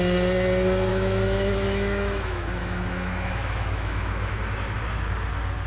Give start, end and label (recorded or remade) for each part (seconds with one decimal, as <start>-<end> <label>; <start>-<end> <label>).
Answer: 0.0-0.9 recorded; 0.9-4.3 remade; 4.3-5.7 recorded